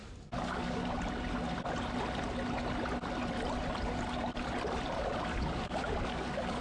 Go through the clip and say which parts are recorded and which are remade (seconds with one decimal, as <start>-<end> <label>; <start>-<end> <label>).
0.0-0.9 remade; 0.9-5.3 recorded; 5.3-6.6 remade